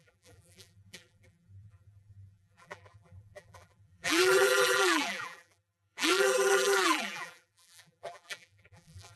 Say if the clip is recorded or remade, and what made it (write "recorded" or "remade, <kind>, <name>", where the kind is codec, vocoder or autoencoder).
remade, vocoder, BigVGAN v2